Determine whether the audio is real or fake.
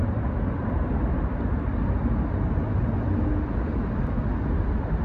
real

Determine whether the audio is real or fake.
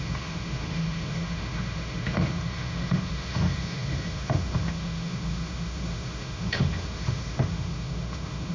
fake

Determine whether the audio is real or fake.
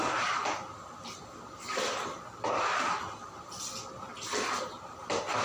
real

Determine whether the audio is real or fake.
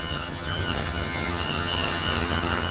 fake